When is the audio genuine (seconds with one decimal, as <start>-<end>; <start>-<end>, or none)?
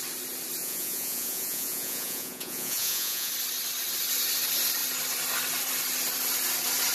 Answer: 0.0-0.6; 3.3-6.9